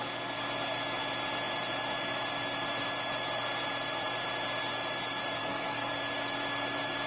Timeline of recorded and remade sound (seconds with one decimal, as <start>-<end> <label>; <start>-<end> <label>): 0.0-5.4 recorded; 5.4-5.9 remade; 5.9-7.1 recorded